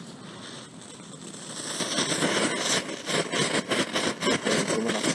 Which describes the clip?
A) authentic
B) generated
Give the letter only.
A